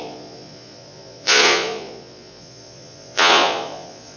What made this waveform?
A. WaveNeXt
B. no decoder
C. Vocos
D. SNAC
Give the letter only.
C